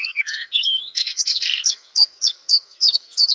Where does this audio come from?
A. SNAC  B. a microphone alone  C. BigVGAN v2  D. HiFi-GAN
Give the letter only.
A